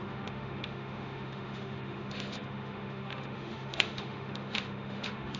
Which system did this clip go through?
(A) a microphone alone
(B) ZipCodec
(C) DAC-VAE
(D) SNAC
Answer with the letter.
C